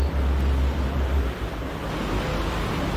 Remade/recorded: recorded